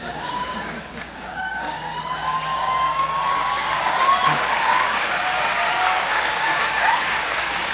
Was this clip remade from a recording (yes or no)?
yes